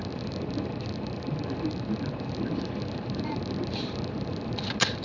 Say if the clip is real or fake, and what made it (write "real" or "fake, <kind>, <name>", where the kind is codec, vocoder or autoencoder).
real